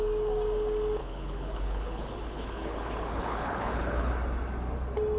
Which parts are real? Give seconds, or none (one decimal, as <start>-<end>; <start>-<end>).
0.0-1.0; 4.1-5.2